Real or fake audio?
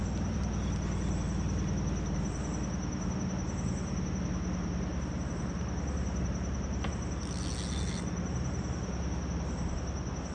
real